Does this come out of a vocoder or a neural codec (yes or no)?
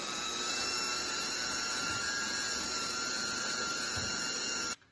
no